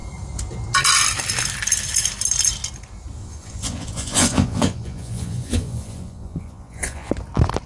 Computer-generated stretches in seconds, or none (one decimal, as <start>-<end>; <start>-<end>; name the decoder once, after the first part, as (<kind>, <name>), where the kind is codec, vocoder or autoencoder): 3.2-7.1 (vocoder, Vocos)